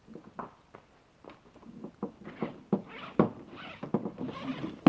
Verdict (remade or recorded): recorded